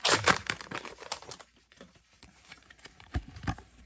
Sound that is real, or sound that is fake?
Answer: fake